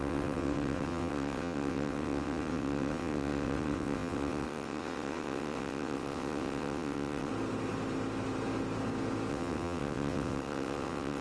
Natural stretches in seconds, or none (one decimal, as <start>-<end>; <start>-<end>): 7.3-9.3